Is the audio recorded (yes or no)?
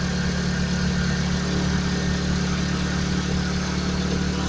yes